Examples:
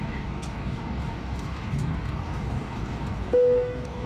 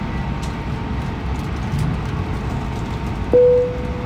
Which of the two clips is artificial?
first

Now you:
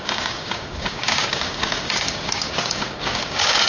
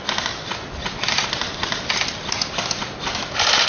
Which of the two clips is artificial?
first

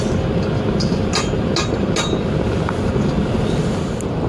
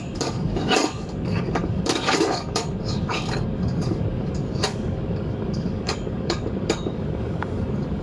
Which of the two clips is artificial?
second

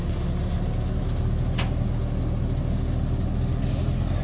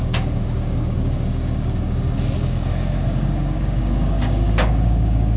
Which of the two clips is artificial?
second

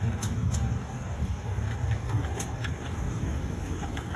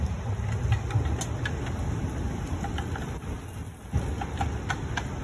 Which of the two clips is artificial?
first